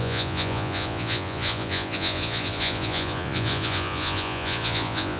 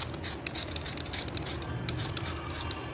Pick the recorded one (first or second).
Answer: second